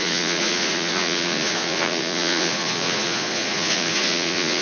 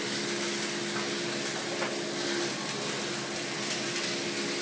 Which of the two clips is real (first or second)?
second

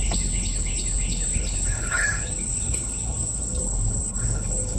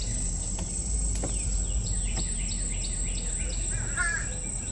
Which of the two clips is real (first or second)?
second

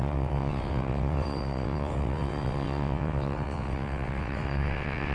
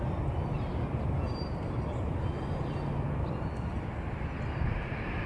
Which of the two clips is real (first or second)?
second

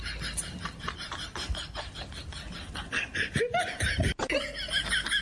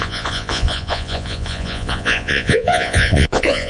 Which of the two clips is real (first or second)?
first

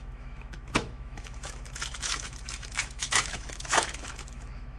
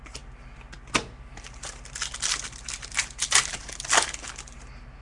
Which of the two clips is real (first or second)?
second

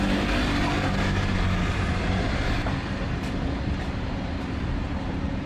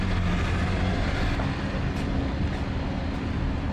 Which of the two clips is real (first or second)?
second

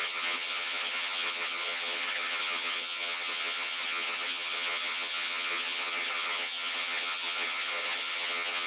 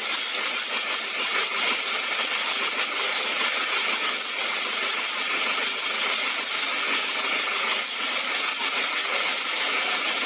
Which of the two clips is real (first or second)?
second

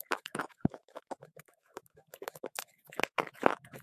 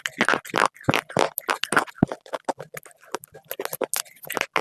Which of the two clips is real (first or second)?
second